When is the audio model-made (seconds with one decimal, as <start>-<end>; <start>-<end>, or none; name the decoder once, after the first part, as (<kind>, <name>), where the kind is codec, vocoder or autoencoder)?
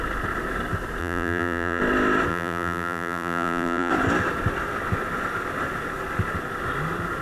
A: 1.0-1.8 (vocoder, BigVGAN v2); 2.3-3.9